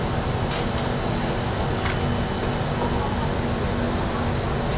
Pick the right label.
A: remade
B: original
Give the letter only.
B